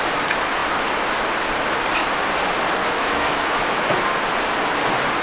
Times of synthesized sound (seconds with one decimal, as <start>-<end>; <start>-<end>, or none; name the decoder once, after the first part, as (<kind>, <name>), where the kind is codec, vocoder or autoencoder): 2.8-3.8 (autoencoder, DAC-VAE)